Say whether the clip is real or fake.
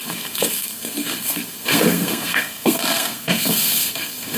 fake